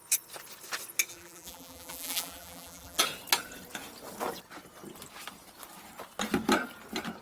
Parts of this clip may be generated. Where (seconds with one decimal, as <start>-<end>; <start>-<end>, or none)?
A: 1.1-3.0